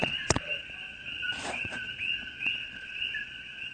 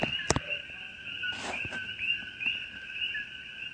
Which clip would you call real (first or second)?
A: second